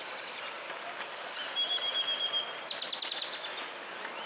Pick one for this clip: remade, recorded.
recorded